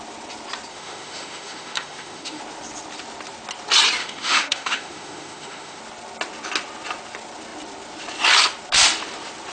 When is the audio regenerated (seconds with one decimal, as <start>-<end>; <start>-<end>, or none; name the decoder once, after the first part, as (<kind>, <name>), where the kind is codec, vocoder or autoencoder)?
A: 0.7-2.4 (autoencoder, DAC-VAE); 4.0-5.8